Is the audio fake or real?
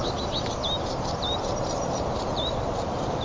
fake